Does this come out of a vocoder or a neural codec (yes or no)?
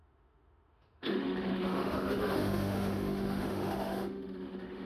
yes